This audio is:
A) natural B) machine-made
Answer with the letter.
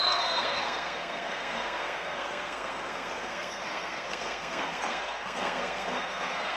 B